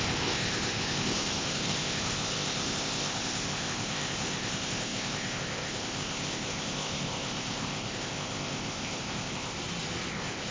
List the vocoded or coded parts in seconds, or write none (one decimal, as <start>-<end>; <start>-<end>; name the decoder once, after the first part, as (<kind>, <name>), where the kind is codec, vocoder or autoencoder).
0.0-9.6 (codec, ZipCodec); 10.1-10.5